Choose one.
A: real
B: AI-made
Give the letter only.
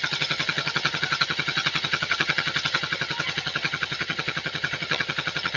B